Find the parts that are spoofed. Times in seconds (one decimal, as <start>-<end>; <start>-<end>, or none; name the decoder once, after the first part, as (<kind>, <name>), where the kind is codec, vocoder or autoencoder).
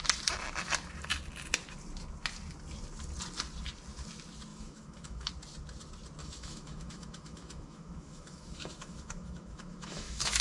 4.5-5.3 (autoencoder, DAC-VAE); 6.2-10.4